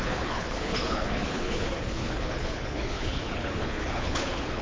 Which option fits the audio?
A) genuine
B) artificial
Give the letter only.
B